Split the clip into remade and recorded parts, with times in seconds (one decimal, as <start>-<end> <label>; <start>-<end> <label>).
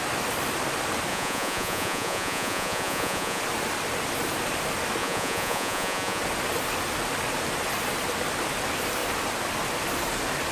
0.0-1.1 recorded; 1.1-3.4 remade; 3.4-5.0 recorded; 5.0-6.2 remade; 6.2-10.5 recorded